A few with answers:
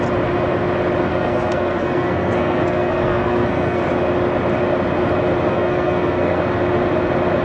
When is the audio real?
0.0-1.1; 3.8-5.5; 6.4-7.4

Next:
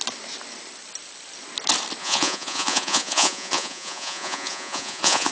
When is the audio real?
0.0-2.0

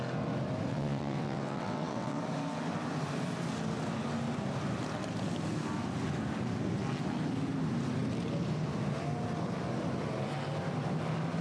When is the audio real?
0.0-0.7; 2.2-11.4

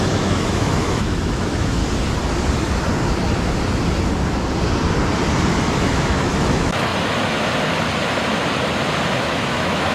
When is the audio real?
1.8-5.6; 6.9-9.2

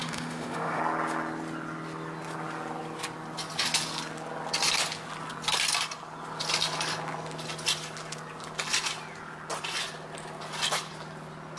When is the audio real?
0.8-11.6

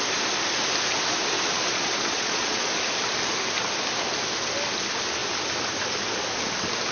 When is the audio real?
0.0-1.7; 2.7-6.9